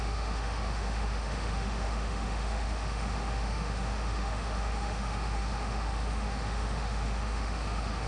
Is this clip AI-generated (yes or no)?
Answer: yes